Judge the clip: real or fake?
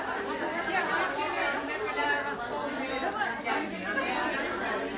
real